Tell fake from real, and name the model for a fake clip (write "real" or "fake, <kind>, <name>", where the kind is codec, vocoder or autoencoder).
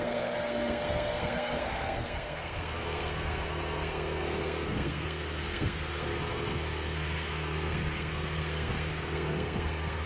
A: fake, codec, SNAC